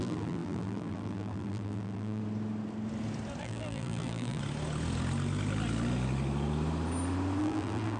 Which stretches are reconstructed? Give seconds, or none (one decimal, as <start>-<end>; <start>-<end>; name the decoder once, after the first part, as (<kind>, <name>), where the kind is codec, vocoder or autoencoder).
0.0-2.2 (vocoder, BigVGAN v2); 3.4-4.4; 7.4-8.0